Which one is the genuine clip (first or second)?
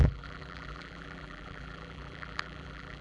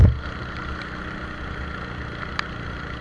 second